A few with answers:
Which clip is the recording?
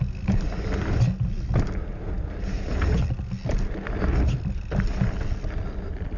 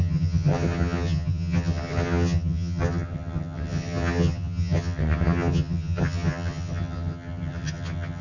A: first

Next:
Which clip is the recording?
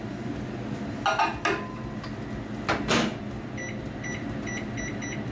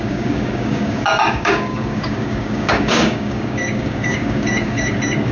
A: first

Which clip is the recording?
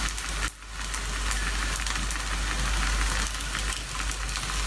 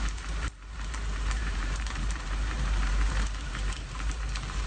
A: first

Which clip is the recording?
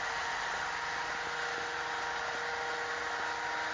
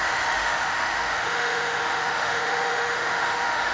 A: first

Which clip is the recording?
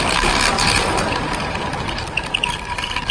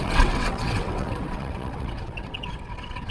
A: first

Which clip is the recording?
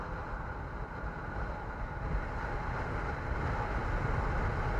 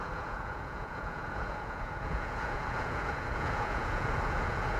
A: first